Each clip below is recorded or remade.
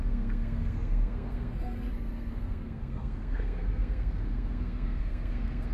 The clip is remade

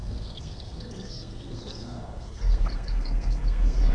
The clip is remade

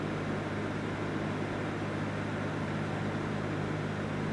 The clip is recorded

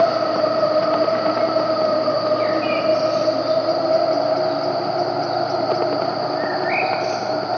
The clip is recorded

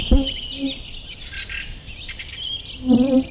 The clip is recorded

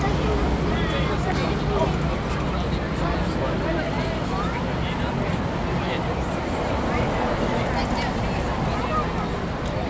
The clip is recorded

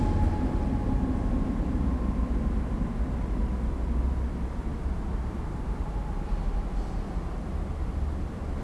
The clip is recorded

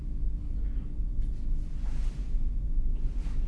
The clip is recorded